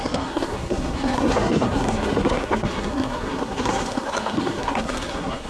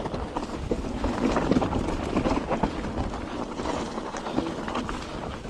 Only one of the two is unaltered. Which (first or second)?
second